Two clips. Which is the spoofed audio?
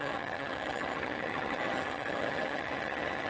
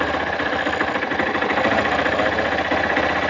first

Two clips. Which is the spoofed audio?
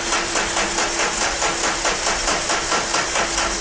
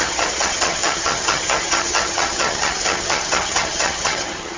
second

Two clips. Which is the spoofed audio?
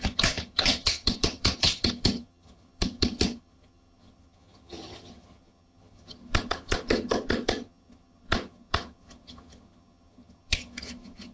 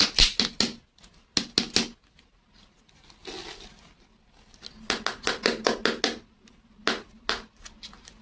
first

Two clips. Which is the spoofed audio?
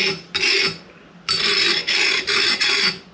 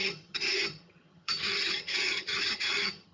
second